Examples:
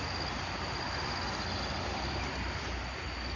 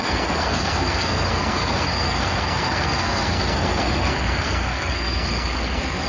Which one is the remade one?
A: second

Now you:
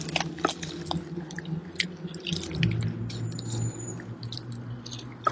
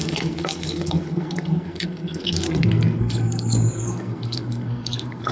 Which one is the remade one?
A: second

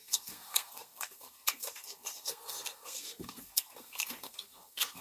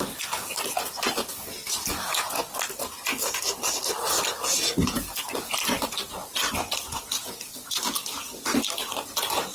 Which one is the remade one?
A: first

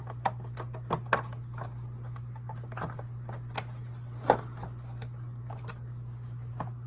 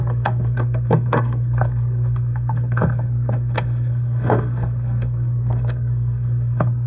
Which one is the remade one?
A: second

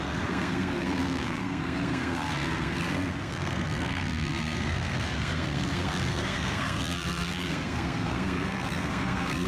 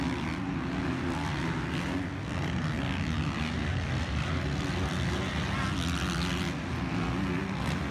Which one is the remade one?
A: first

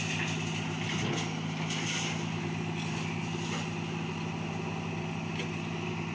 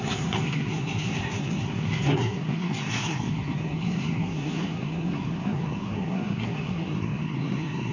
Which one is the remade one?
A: second